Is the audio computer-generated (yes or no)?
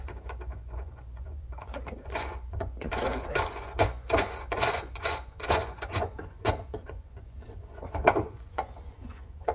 yes